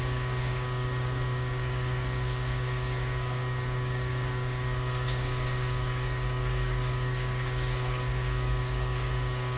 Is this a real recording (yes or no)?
no